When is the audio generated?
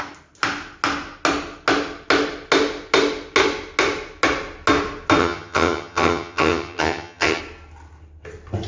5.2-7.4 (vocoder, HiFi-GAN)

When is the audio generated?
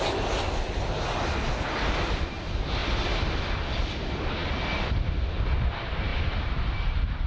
none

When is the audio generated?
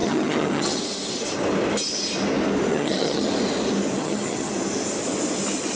0.0-0.8 (vocoder, HiFi-GAN); 2.7-3.3; 4.0-4.5